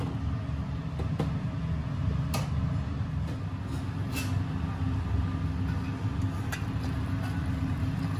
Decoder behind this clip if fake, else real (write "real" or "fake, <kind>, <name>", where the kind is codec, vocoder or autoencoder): real